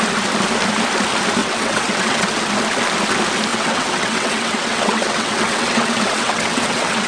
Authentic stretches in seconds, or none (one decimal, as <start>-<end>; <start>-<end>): 0.0-1.4; 2.3-3.5